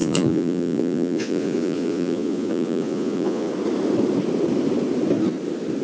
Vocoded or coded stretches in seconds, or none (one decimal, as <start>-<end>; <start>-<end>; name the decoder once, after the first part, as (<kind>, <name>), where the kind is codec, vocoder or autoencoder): 0.0-3.5 (vocoder, Vocos)